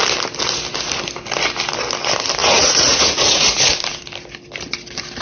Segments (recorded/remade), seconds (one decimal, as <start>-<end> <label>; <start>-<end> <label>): 0.0-2.4 recorded; 2.4-3.6 remade; 3.6-5.2 recorded